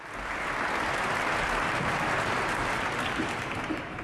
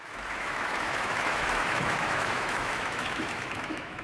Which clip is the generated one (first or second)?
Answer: second